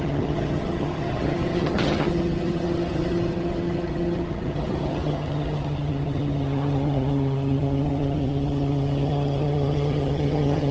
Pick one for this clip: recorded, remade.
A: remade